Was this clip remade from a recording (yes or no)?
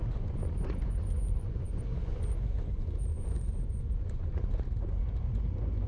yes